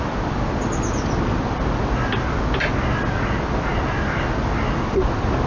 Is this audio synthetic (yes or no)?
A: no